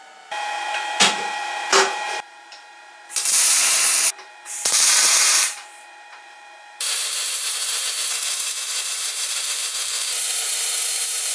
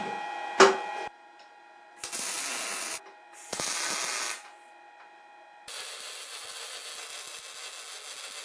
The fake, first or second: first